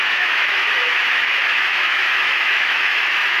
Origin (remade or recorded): remade